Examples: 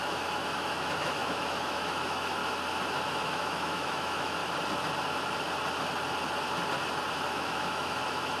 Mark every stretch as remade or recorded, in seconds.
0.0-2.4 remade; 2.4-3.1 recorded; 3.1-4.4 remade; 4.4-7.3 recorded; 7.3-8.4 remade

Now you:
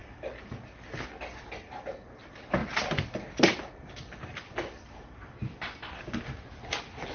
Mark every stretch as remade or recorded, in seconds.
0.0-7.1 recorded

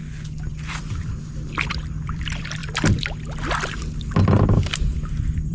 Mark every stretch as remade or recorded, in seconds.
0.0-0.6 recorded; 0.6-2.6 remade; 2.6-5.1 recorded; 5.1-5.5 remade

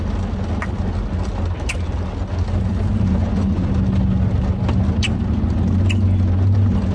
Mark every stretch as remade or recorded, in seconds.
0.0-3.2 recorded; 3.2-3.7 remade; 3.7-6.9 recorded

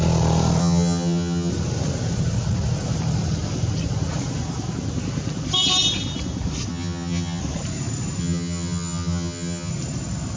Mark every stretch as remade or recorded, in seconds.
0.0-0.6 recorded; 0.6-1.5 remade; 1.5-6.7 recorded; 6.7-7.4 remade; 7.4-8.2 recorded; 8.2-9.7 remade; 9.7-10.4 recorded

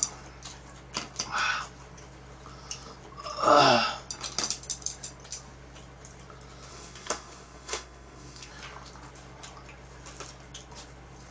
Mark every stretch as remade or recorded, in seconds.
0.0-6.7 recorded; 6.7-8.5 remade; 8.5-11.3 recorded

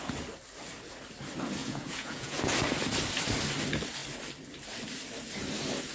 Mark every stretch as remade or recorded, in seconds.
0.0-1.6 recorded; 1.6-2.4 remade; 2.4-5.9 recorded

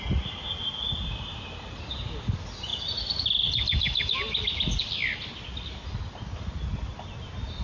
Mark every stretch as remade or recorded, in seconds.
0.0-7.6 recorded